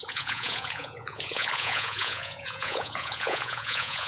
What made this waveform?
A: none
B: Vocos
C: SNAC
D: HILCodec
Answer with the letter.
B